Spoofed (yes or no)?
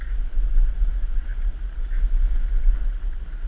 no